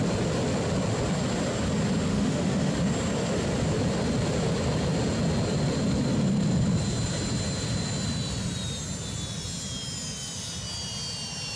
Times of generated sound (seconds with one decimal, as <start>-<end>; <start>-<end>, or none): 2.1-2.7